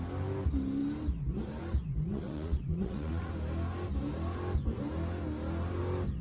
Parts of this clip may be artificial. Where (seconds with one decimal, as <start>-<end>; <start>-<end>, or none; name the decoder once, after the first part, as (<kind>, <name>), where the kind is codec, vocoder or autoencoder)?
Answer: 2.1-3.3 (vocoder, WaveNeXt)